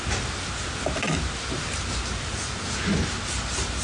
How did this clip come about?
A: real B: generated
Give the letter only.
A